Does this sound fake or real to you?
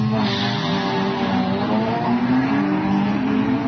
real